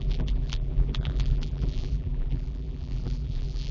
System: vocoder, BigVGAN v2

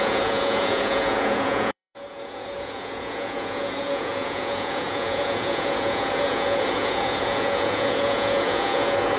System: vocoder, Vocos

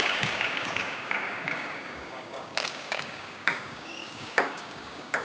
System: codec, DAC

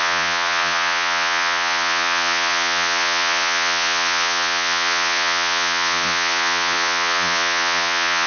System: vocoder, Vocos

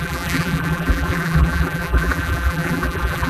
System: vocoder, BigVGAN v2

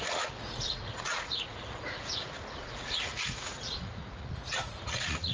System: vocoder, Vocos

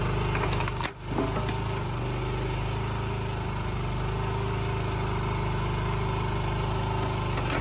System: none